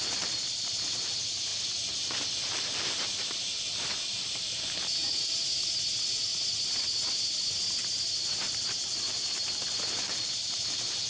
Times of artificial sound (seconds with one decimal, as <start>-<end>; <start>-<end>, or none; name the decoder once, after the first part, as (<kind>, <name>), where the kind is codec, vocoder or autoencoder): 0.0-1.5 (vocoder, BigVGAN v2); 4.1-6.3; 7.2-11.1